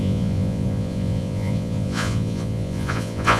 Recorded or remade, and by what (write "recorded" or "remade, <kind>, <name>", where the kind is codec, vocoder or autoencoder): remade, vocoder, Vocos